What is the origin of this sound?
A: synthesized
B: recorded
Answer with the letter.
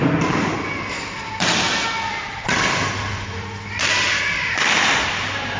B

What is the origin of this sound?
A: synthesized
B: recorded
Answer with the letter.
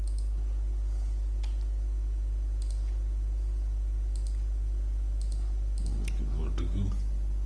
B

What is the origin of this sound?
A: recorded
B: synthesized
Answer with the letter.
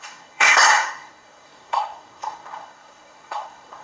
B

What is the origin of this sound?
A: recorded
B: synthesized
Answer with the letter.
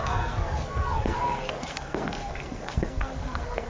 B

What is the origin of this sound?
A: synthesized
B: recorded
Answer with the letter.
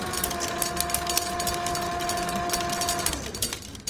B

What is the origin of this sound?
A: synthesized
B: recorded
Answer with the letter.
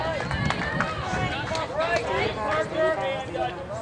B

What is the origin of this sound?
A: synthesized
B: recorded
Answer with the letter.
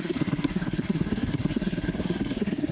A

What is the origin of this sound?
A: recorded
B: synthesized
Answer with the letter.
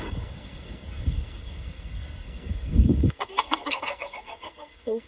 B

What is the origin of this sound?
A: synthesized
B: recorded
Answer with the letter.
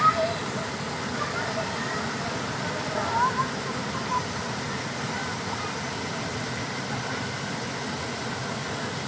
B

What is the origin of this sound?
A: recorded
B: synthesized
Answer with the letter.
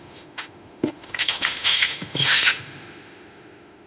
B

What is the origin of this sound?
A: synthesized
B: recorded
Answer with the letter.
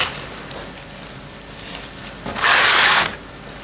B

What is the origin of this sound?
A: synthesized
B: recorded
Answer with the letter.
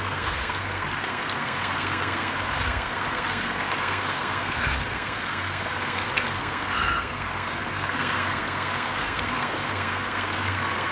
A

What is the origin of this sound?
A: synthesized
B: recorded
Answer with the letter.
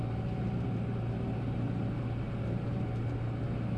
B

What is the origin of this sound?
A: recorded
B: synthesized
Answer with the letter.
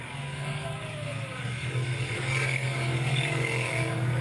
B